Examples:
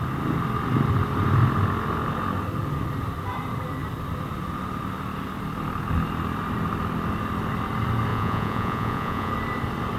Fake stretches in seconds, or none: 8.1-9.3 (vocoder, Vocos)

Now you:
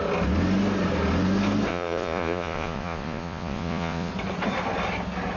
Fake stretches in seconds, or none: 1.7-4.1 (vocoder, Vocos)

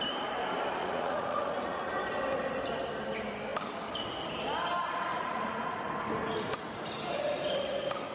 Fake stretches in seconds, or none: 0.8-1.9 (vocoder, Vocos); 5.1-5.8

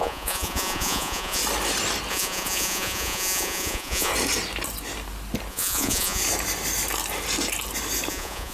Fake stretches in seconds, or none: 0.0-1.4 (vocoder, Vocos); 2.1-4.1; 5.5-6.2; 8.1-8.5

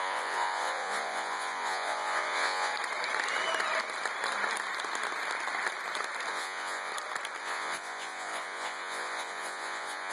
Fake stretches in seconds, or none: 0.0-2.7 (vocoder, Vocos); 6.3-6.9; 7.4-10.1

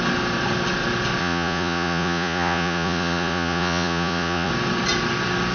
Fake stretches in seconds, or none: 1.2-4.5 (vocoder, Vocos)

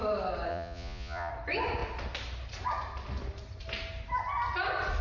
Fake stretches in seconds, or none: 0.5-1.3 (vocoder, Vocos)

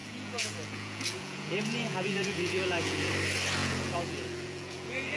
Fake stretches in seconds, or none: 0.0-3.1 (vocoder, Vocos); 3.6-5.2